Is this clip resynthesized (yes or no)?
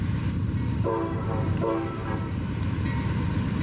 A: yes